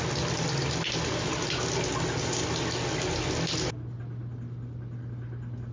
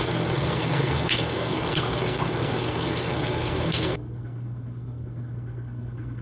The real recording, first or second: first